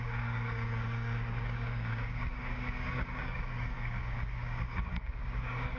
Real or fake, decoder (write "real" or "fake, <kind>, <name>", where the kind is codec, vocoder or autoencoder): fake, codec, DAC